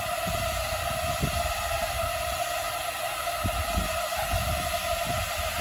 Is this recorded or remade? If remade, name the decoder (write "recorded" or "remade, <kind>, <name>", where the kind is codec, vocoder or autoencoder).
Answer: recorded